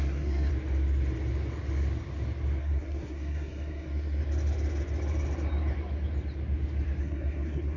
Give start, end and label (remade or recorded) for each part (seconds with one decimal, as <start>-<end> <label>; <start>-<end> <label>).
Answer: 0.0-0.5 remade; 0.5-2.6 recorded; 2.6-4.2 remade; 4.2-7.0 recorded; 7.0-7.8 remade